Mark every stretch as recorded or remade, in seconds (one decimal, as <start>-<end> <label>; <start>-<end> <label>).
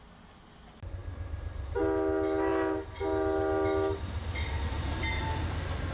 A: 0.0-5.9 recorded